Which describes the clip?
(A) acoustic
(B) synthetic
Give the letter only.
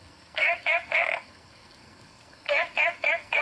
B